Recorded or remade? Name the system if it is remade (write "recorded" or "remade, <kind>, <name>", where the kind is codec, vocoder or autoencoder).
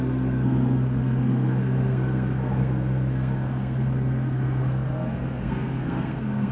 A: remade, codec, SNAC